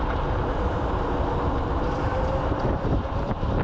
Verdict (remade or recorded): remade